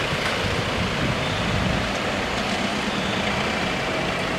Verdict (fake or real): real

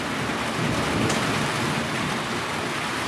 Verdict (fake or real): real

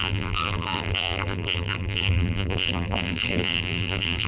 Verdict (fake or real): fake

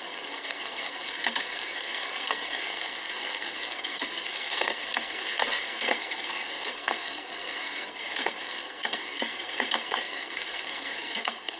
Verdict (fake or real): fake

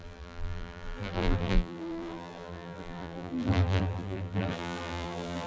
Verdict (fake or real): fake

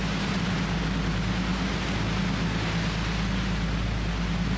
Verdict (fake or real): real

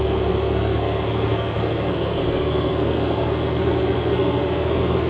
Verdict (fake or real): fake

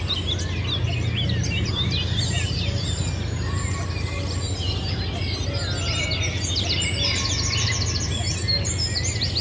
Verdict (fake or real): real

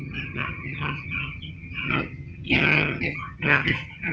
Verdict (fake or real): fake